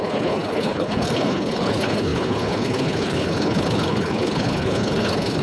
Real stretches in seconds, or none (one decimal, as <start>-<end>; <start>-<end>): none